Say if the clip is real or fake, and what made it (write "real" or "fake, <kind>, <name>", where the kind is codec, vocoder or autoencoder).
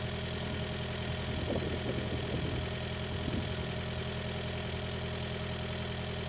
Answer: real